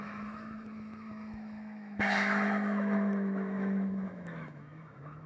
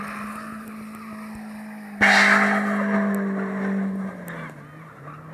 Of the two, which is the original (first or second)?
second